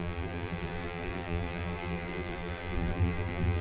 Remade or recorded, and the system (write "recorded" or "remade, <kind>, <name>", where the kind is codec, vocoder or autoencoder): remade, vocoder, BigVGAN v2